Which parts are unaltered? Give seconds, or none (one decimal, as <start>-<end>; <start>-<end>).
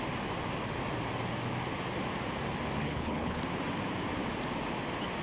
0.0-2.8; 3.4-5.2